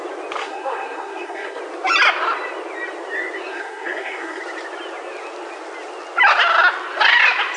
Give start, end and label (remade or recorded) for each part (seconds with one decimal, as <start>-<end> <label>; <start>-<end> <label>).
0.0-0.4 recorded; 0.4-1.6 remade; 1.6-3.5 recorded; 3.5-4.4 remade; 4.4-7.6 recorded